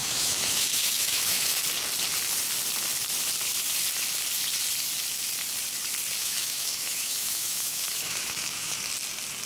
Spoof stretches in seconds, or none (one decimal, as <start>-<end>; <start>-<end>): 0.0-1.6; 6.2-8.8